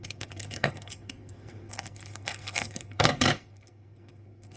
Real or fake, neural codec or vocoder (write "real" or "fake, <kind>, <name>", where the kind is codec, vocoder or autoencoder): fake, codec, SNAC